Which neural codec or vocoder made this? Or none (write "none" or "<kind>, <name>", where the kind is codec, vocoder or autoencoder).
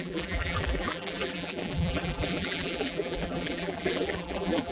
vocoder, BigVGAN v2